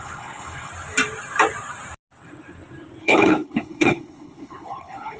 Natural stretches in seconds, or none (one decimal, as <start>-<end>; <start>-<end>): 0.7-3.0

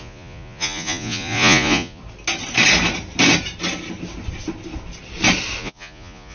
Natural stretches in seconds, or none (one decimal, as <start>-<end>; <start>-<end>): 2.0-5.6

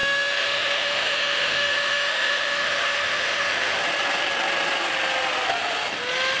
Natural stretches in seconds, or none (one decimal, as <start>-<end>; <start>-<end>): 3.8-6.4